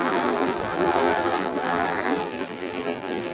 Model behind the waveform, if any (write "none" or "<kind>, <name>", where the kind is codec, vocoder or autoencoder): vocoder, BigVGAN v2